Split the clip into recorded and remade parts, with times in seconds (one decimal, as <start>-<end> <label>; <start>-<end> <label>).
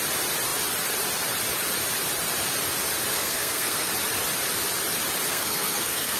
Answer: 0.0-3.1 recorded; 3.1-3.9 remade; 3.9-5.3 recorded; 5.3-6.2 remade